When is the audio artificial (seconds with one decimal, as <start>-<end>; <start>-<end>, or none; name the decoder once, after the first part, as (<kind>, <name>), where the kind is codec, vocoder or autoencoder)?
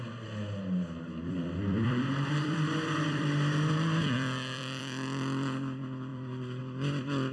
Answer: 1.3-4.8 (vocoder, BigVGAN v2); 6.1-6.6